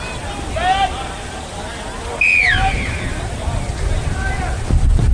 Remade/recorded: recorded